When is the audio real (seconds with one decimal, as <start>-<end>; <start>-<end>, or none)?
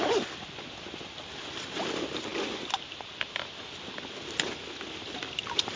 0.0-5.8